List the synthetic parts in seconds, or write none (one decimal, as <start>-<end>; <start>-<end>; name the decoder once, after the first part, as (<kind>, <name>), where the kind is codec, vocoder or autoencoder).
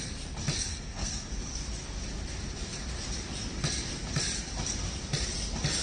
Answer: 0.7-1.3 (codec, SNAC)